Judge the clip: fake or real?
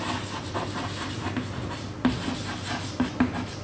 real